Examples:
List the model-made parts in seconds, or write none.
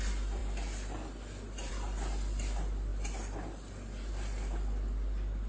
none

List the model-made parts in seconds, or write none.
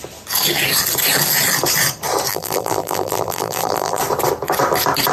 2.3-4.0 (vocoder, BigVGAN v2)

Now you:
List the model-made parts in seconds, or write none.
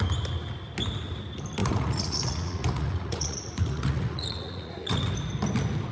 1.6-5.1 (vocoder, Vocos)